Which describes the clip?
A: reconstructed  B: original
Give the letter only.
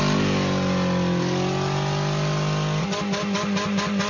B